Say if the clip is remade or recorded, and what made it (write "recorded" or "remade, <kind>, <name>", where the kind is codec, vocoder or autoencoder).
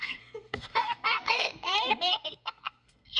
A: remade, codec, SNAC